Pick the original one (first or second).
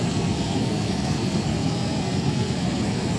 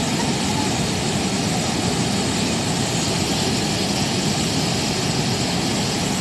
second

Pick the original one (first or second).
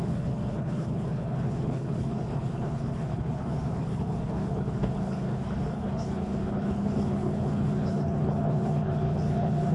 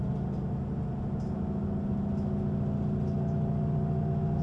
second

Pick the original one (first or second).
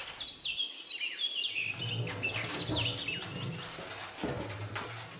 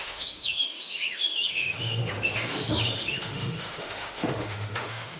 first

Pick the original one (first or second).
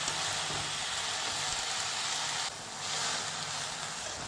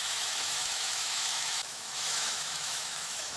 first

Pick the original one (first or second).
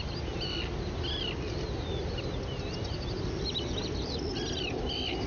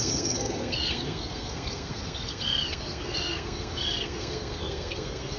first